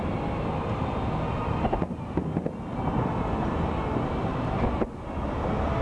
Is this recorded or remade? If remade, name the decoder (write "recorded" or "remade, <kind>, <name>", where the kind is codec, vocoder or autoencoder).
recorded